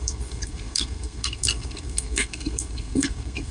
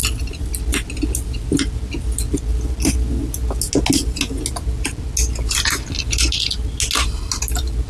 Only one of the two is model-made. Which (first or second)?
first